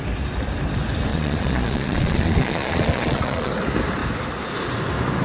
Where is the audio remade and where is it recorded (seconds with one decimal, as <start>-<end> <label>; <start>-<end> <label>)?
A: 0.0-1.1 recorded; 1.1-3.5 remade; 3.5-5.2 recorded